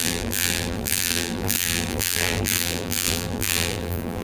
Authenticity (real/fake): fake